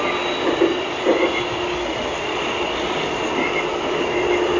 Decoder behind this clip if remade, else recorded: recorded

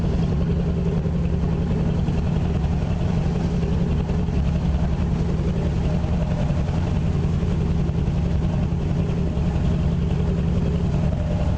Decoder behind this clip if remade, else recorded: recorded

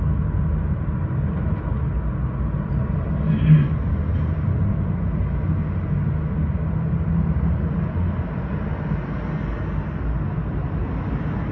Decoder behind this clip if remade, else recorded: recorded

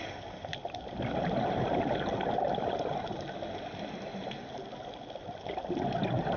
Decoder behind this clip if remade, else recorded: recorded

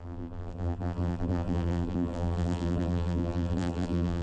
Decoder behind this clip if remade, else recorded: remade, vocoder, BigVGAN v2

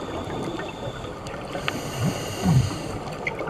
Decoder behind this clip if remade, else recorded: recorded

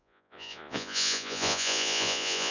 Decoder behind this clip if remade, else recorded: remade, vocoder, Vocos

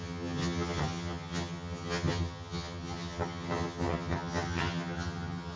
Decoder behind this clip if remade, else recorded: remade, vocoder, HiFi-GAN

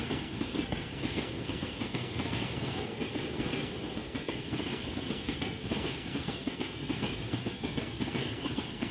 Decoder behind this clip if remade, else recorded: remade, codec, SNAC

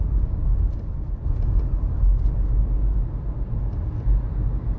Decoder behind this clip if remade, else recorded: recorded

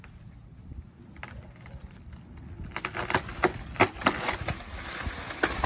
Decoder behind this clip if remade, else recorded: recorded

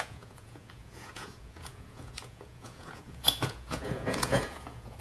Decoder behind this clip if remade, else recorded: remade, vocoder, Vocos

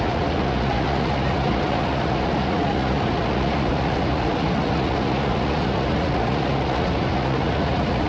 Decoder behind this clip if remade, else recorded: remade, vocoder, Vocos